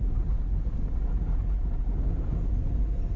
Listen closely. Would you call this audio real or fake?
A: real